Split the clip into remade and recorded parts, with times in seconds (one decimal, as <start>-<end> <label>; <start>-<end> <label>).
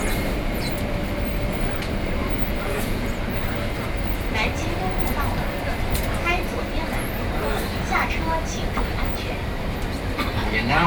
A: 0.0-2.2 recorded; 2.2-3.1 remade; 3.1-10.9 recorded